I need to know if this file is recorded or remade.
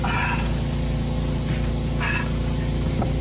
recorded